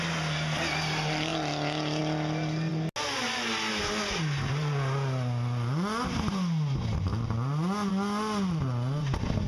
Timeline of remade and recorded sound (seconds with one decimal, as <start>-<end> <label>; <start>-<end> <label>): 0.0-9.5 recorded